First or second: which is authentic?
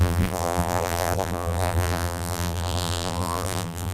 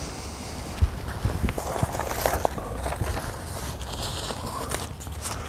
second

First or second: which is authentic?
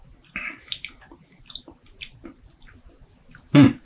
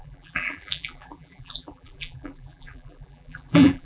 first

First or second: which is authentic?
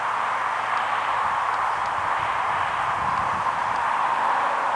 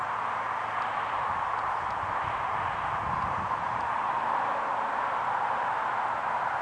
first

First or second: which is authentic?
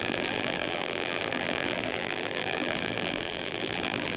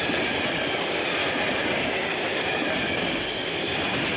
second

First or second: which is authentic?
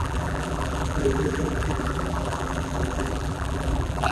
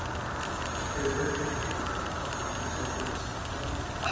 second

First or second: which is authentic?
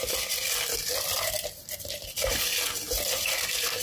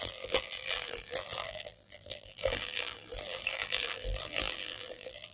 first